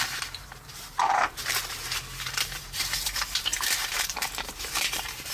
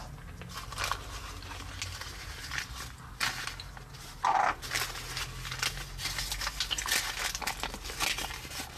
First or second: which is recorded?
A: second